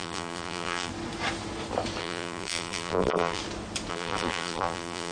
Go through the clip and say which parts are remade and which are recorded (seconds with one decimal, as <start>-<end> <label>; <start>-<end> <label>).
0.0-0.9 remade; 0.9-2.0 recorded; 2.0-3.4 remade; 3.4-3.9 recorded; 3.9-5.1 remade